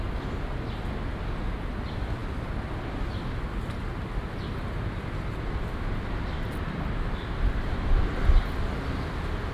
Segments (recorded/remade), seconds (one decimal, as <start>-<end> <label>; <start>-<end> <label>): 0.0-9.5 recorded

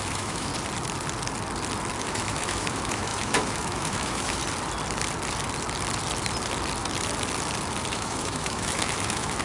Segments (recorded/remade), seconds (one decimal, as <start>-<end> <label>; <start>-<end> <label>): 0.0-0.5 remade; 0.5-2.0 recorded; 2.0-4.4 remade; 4.4-7.9 recorded; 7.9-9.4 remade

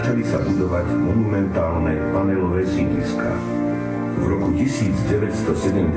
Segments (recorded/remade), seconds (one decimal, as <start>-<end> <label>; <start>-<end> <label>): 0.0-6.0 recorded

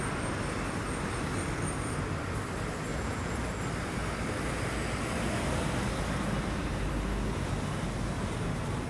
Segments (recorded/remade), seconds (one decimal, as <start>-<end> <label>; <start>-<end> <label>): 0.0-2.9 recorded; 2.9-3.5 remade; 3.5-8.9 recorded

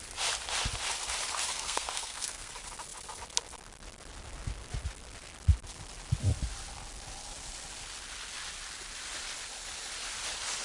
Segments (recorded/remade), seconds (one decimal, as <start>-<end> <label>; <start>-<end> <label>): 0.0-1.5 recorded; 1.5-2.5 remade; 2.5-10.6 recorded

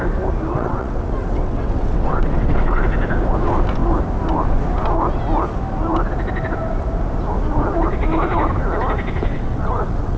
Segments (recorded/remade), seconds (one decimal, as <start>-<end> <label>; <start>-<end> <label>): 0.0-0.5 recorded; 0.5-2.8 remade; 2.8-9.3 recorded; 9.3-10.2 remade